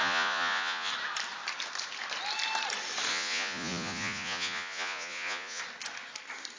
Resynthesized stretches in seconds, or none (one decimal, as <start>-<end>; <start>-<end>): 0.0-0.9; 3.1-5.6